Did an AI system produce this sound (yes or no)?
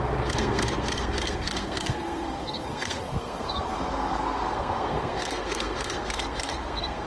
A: yes